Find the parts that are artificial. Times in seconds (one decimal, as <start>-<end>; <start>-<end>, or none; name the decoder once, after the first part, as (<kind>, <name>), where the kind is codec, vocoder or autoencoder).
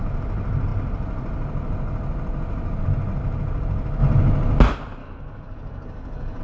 5.0-6.4 (codec, DAC)